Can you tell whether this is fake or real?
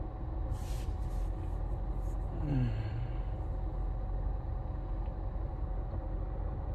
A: real